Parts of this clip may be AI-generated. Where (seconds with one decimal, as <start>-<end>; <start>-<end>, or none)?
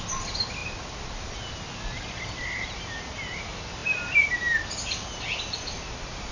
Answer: none